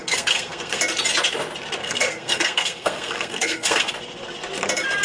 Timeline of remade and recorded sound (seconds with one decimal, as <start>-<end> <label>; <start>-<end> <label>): 0.0-0.8 remade; 0.8-1.8 recorded; 1.8-3.9 remade; 3.9-5.0 recorded